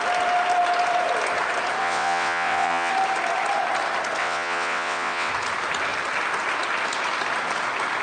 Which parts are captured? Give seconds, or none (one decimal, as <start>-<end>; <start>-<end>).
0.0-1.8; 2.9-4.2; 5.3-8.0